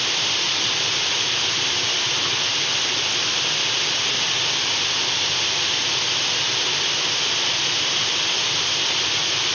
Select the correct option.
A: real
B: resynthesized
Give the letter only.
A